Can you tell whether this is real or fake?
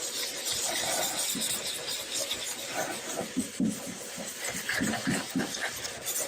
fake